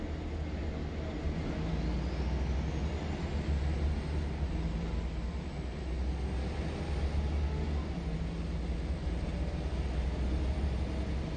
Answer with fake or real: real